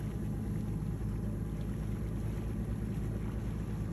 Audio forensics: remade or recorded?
recorded